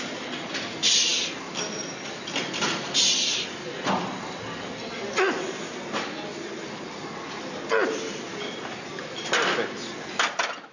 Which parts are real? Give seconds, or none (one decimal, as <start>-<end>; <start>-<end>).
0.0-10.7